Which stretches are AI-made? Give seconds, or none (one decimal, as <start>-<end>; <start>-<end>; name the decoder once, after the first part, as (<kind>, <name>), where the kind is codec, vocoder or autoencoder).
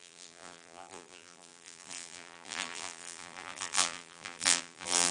0.0-5.1 (vocoder, BigVGAN v2)